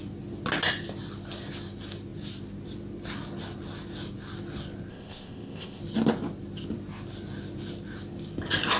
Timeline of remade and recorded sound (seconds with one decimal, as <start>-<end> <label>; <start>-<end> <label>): 0.0-4.9 recorded; 4.9-5.8 remade; 5.8-8.8 recorded